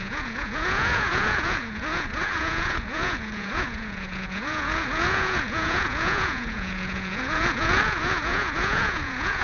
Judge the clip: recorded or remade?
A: remade